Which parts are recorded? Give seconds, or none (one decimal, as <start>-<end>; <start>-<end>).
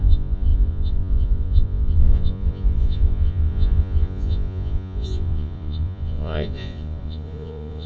none